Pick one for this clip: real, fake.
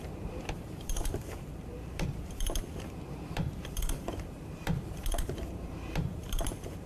fake